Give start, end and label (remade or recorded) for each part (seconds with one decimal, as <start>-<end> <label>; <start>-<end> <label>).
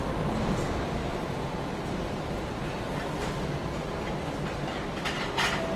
0.0-1.0 recorded; 1.0-4.1 remade; 4.1-5.8 recorded